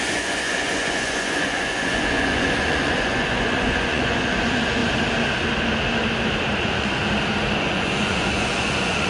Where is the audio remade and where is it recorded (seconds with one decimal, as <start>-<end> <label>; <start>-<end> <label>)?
0.0-4.8 remade; 4.8-6.6 recorded; 6.6-7.0 remade; 7.0-7.5 recorded; 7.5-9.1 remade